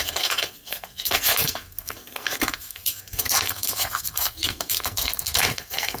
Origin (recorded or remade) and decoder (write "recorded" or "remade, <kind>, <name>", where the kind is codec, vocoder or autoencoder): remade, codec, SNAC